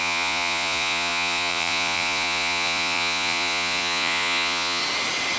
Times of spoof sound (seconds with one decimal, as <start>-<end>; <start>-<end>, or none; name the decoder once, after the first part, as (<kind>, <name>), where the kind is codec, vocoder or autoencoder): 0.0-4.8 (vocoder, Vocos)